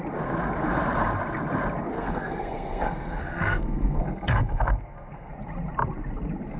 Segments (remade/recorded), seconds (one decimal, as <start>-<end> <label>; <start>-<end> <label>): 0.0-1.9 recorded; 1.9-5.3 remade; 5.3-6.6 recorded

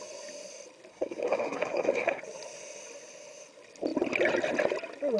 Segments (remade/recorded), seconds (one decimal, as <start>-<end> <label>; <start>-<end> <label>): 0.0-0.9 recorded; 0.9-2.2 remade; 2.2-5.2 recorded